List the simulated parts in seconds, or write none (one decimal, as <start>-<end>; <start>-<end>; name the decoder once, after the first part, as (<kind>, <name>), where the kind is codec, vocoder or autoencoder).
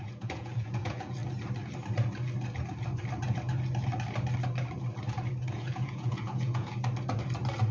0.0-1.2 (vocoder, Vocos); 5.5-6.7